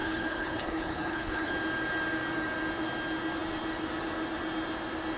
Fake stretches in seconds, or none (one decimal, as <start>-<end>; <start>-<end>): 0.0-1.5